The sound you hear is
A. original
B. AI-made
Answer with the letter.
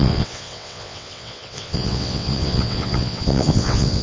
B